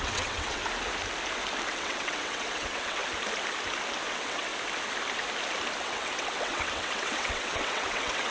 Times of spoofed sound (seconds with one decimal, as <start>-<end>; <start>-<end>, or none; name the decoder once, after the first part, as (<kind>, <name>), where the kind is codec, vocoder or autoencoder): 0.0-0.6 (vocoder, WaveNeXt); 1.7-3.0; 4.1-4.5; 5.8-8.3